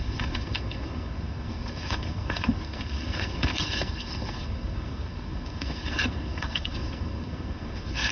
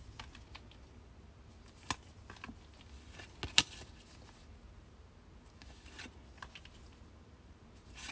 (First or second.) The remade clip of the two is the first